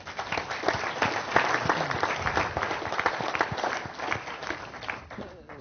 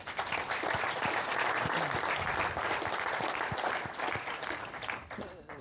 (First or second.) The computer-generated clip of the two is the second